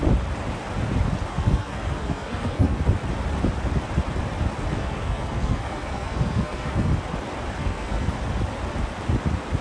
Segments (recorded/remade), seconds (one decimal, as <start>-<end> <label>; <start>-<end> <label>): 0.0-1.3 recorded; 1.3-2.8 remade; 2.8-4.7 recorded; 4.7-6.9 remade; 6.9-7.6 recorded; 7.6-8.1 remade; 8.1-9.6 recorded